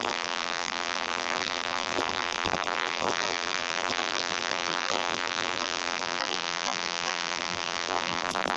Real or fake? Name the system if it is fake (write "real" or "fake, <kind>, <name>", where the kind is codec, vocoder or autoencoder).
fake, vocoder, BigVGAN v2